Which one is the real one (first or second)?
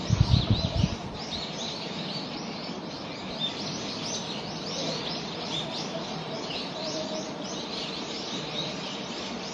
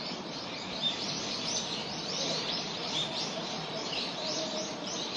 first